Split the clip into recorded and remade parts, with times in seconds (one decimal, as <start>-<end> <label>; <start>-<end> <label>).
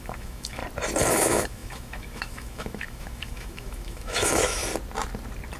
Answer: 0.0-0.6 remade; 0.6-1.1 recorded; 1.1-4.6 remade; 4.6-5.6 recorded